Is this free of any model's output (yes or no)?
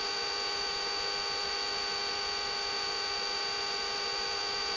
yes